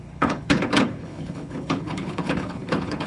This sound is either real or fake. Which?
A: fake